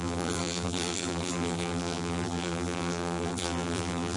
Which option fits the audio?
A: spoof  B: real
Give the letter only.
A